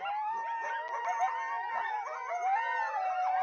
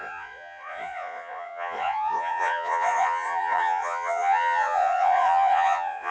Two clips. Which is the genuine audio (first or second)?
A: first